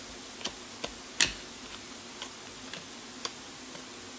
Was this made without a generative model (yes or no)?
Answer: yes